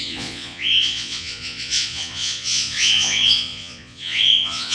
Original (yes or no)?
no